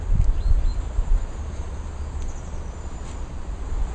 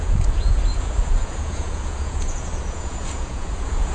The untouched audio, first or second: first